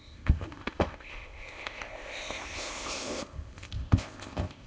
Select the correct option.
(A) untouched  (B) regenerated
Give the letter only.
B